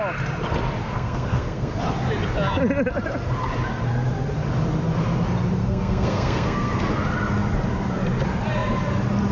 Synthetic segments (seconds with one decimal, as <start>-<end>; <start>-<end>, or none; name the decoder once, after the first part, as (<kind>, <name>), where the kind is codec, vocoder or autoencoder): 0.8-1.7 (codec, SNAC); 5.6-6.8